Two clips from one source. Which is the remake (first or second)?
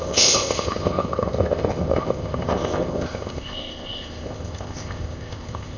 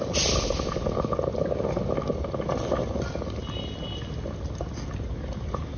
first